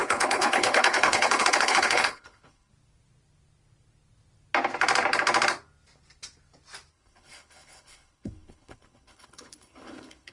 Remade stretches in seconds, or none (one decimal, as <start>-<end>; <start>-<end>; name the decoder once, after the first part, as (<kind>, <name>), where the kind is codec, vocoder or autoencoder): 0.0-2.7 (codec, HILCodec); 6.9-10.3